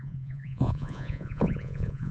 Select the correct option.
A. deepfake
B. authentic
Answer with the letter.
A